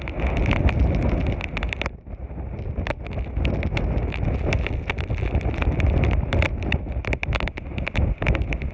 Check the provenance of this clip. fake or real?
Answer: real